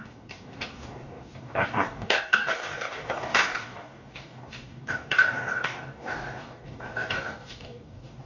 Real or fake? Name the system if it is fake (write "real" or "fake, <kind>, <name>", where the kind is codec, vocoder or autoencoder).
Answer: fake, codec, DAC